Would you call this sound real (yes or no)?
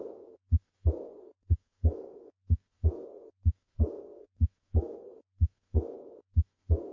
no